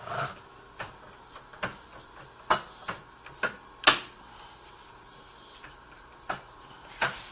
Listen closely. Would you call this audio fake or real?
real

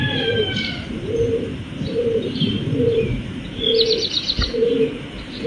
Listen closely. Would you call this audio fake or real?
fake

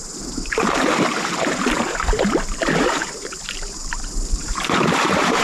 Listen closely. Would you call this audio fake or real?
fake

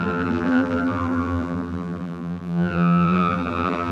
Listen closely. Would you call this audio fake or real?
fake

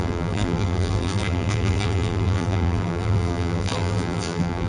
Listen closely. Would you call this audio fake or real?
fake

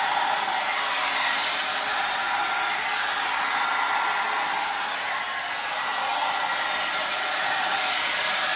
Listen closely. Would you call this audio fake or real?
real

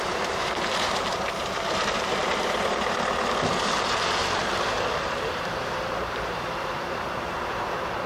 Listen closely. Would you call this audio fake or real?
fake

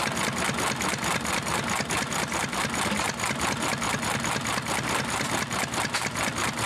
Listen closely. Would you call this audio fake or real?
real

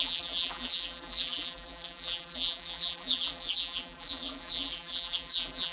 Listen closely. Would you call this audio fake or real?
fake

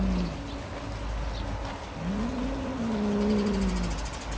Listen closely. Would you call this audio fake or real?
real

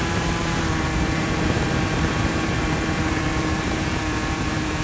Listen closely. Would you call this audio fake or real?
fake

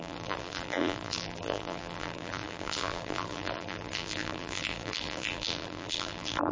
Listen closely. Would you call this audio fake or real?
fake